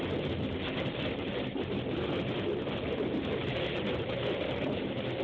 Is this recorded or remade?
recorded